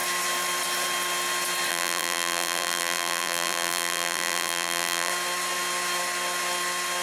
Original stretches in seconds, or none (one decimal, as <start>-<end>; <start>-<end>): 0.0-1.7; 5.1-7.0